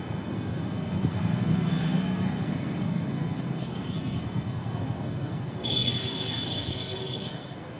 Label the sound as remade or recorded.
remade